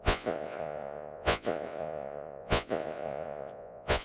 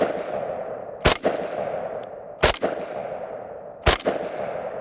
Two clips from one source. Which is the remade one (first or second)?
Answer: first